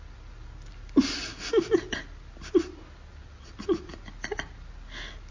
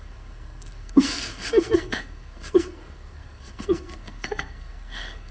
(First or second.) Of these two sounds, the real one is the first